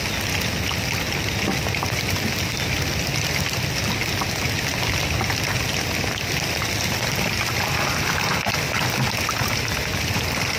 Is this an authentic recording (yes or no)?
yes